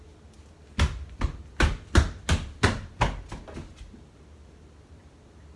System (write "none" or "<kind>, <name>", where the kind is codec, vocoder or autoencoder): none